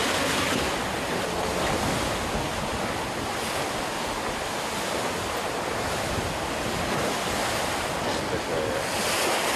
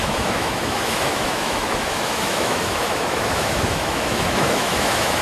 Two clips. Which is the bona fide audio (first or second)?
first